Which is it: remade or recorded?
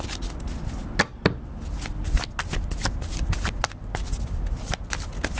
recorded